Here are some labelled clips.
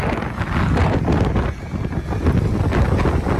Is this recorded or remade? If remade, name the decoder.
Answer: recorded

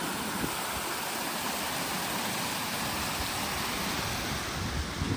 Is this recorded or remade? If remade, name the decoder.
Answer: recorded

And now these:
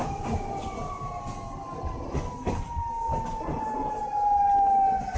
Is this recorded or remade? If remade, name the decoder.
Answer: recorded